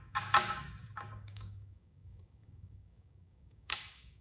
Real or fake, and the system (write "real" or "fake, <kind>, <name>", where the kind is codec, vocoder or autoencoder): fake, codec, DAC